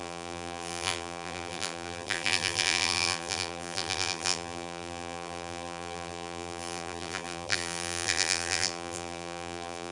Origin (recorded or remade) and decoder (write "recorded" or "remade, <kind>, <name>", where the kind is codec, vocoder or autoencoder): remade, vocoder, BigVGAN v2